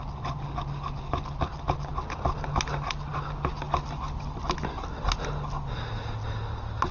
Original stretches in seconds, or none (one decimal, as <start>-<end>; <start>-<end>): 0.0-6.9